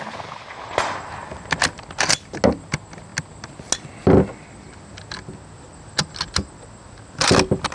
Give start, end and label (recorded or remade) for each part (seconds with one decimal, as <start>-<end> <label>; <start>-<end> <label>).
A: 0.0-7.7 recorded